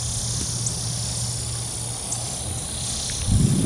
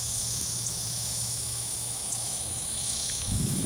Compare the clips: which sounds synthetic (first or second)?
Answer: second